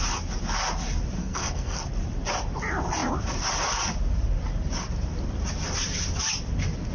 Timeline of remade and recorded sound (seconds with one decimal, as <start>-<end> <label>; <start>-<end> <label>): 0.0-1.2 recorded; 1.2-1.8 remade; 1.8-6.9 recorded